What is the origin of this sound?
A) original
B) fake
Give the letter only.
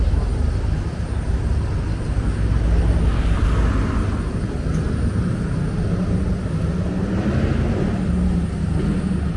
A